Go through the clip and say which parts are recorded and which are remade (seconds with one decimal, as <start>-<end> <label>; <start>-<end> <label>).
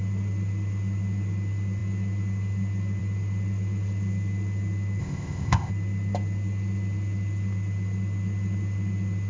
0.0-5.0 recorded; 5.0-5.7 remade; 5.7-9.3 recorded